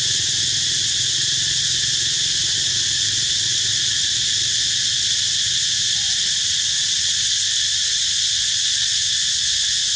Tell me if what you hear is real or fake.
real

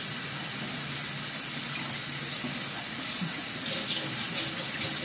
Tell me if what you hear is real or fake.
real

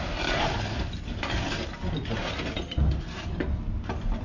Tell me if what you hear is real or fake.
real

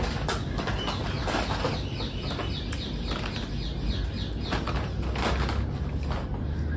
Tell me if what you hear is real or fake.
real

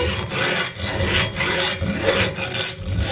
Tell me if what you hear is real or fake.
real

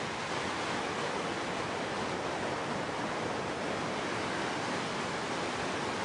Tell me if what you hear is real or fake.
real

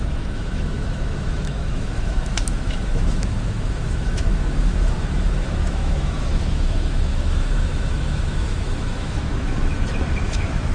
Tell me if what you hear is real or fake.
fake